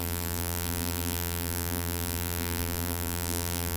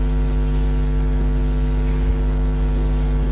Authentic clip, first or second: second